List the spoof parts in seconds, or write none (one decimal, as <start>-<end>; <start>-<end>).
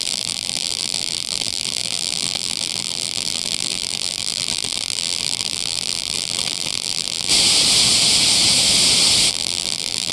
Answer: 0.0-7.3; 9.3-10.1